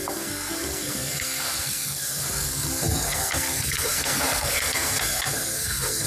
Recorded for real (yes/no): no